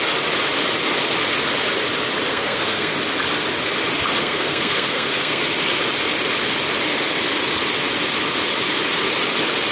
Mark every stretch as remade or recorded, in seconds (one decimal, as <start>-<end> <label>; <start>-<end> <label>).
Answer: 0.0-2.3 recorded; 2.3-2.9 remade; 2.9-4.2 recorded; 4.2-5.4 remade; 5.4-9.7 recorded